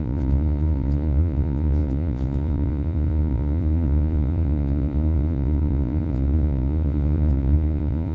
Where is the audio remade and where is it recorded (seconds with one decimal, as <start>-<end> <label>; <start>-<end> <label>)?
0.0-8.1 remade